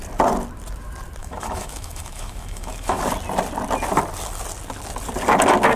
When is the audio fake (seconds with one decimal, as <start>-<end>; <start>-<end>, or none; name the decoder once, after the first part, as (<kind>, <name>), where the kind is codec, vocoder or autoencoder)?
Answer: 1.2-3.0 (autoencoder, DAC-VAE)